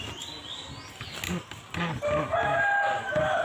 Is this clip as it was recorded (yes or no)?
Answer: yes